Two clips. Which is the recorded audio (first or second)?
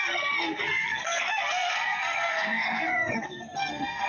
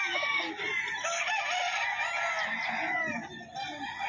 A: second